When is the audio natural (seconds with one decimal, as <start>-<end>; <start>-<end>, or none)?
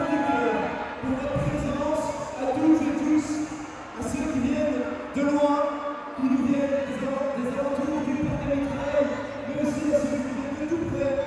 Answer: 0.0-6.2; 6.9-11.3